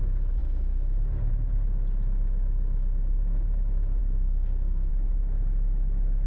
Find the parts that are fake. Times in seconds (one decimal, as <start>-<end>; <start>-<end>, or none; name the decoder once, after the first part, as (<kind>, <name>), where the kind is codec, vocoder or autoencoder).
4.0-4.9 (codec, SNAC)